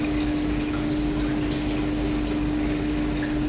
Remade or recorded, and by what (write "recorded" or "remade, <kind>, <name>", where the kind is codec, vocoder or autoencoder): recorded